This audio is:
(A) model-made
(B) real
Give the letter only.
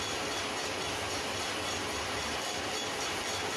B